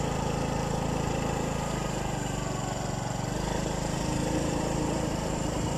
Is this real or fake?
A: fake